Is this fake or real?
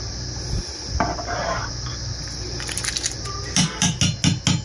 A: real